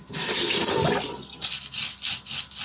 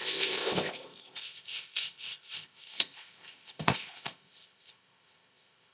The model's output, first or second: second